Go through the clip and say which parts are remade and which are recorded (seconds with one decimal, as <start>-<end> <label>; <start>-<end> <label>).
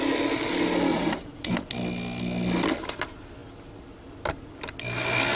0.0-0.9 recorded; 0.9-1.5 remade; 1.5-5.4 recorded